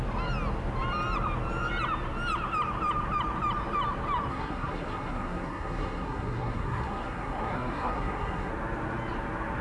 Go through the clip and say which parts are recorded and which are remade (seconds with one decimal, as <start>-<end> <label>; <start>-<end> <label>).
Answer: 0.0-4.3 recorded; 4.3-8.5 remade; 8.5-9.6 recorded